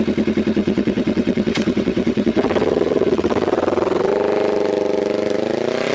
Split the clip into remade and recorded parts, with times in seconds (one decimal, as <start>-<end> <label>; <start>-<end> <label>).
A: 0.0-0.6 recorded; 0.6-4.1 remade; 4.1-5.9 recorded